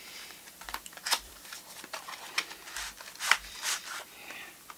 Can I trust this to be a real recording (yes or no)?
no